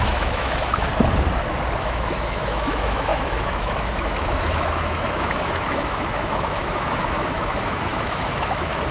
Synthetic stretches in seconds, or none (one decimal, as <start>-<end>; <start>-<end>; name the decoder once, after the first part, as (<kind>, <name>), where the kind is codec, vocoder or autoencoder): 0.0-0.9 (autoencoder, DAC-VAE); 1.8-8.9